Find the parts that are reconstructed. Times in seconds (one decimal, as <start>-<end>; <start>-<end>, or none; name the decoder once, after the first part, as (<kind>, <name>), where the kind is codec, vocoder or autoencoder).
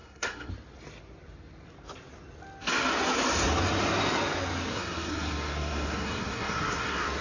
0.0-0.5 (codec, SNAC); 4.7-7.2